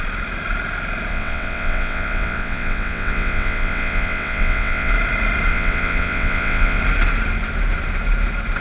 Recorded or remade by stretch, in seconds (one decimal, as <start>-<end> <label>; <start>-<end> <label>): 0.0-1.1 recorded; 1.1-4.9 remade; 4.9-5.5 recorded; 5.5-6.8 remade; 6.8-8.6 recorded